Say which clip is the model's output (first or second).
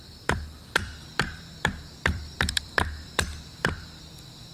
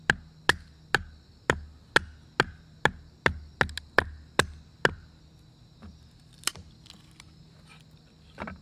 first